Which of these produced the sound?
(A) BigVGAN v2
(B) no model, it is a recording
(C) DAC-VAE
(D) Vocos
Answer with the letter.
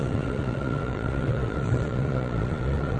D